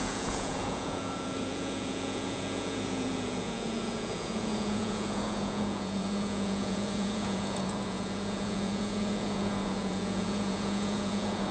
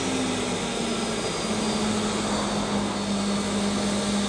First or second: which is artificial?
first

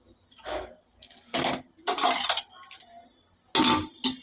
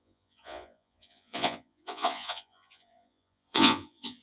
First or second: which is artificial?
second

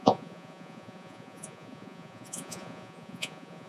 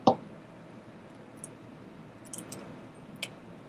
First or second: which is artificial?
first